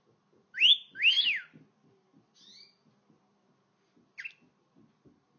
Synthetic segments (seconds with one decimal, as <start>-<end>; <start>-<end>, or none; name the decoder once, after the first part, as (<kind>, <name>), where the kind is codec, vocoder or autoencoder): none